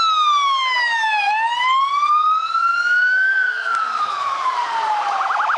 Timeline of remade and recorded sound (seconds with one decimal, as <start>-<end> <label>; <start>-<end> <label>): 0.0-0.6 recorded; 0.6-1.2 remade; 1.2-2.7 recorded; 2.7-4.5 remade; 4.5-5.6 recorded